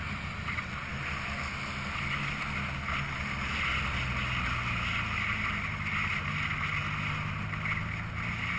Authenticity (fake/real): real